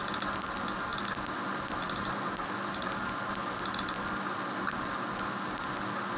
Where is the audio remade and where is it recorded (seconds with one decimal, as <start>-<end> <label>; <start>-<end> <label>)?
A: 0.0-6.2 recorded